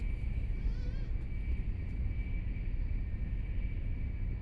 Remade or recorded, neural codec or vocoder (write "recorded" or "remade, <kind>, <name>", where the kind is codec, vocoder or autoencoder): recorded